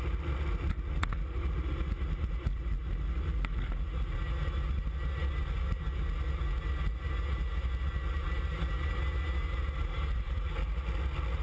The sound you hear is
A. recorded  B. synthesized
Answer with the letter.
A